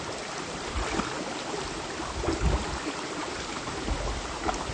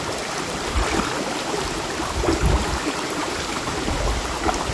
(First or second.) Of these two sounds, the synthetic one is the second